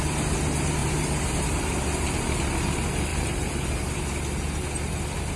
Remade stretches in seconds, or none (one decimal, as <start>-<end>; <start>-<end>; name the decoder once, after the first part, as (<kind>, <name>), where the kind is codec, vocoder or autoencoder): 0.8-1.8 (vocoder, BigVGAN v2); 3.1-3.8